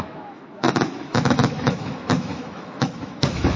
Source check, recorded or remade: remade